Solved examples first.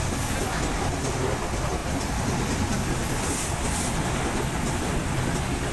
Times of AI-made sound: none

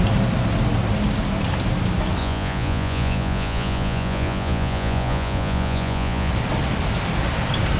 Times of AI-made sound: 2.2-6.3 (vocoder, Vocos)

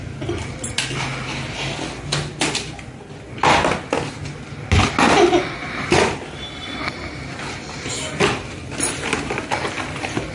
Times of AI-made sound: none

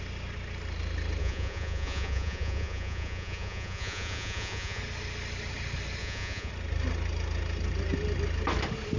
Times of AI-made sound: 1.2-4.8 (vocoder, Vocos); 6.0-6.5

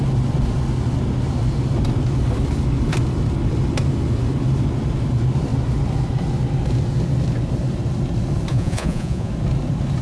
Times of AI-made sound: 8.5-9.3 (vocoder, Vocos)

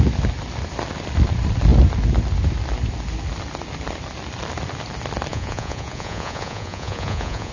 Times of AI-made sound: 5.3-7.5 (vocoder, Vocos)

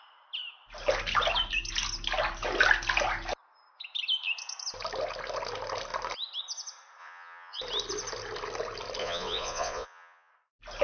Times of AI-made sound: 7.0-7.6 (vocoder, Vocos); 9.0-10.3